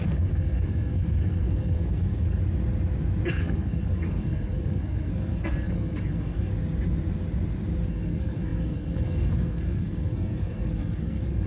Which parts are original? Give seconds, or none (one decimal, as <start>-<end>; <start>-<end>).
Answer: 2.4-3.3; 6.5-7.9